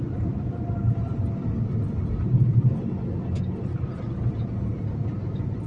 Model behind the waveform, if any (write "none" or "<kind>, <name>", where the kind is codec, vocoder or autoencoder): none